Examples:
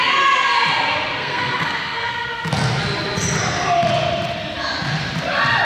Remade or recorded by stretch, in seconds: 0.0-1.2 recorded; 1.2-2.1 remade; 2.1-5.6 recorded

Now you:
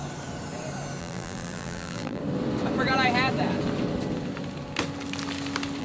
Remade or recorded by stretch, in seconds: 0.0-1.0 recorded; 1.0-2.2 remade; 2.2-5.8 recorded

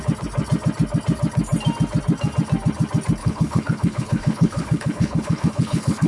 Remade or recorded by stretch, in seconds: 0.0-3.2 recorded; 3.2-6.1 remade

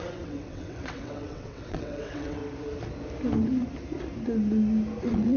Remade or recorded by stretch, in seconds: 0.0-2.4 remade; 2.4-5.0 recorded; 5.0-5.4 remade

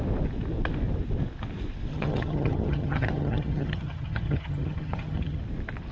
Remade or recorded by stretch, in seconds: 0.0-1.9 recorded; 1.9-5.4 remade; 5.4-5.9 recorded

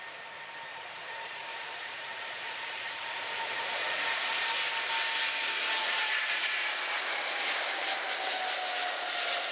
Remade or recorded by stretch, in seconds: 0.0-0.7 recorded; 0.7-4.3 remade; 4.3-5.8 recorded; 5.8-7.1 remade; 7.1-9.5 recorded